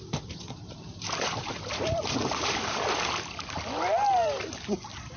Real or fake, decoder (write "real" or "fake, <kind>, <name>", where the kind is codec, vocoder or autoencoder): real